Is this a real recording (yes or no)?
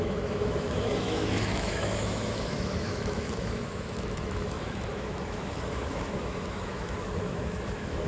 no